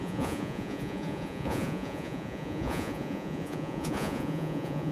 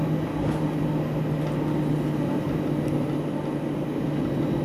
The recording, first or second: second